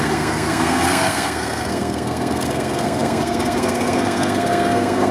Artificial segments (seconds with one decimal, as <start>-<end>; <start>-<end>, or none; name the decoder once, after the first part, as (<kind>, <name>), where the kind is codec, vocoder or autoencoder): 0.0-5.1 (codec, SNAC)